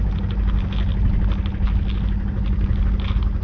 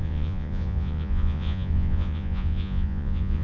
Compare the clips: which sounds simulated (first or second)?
second